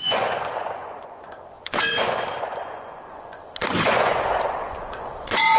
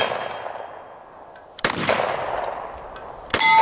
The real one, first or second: second